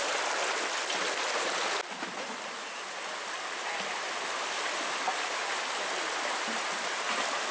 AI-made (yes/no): no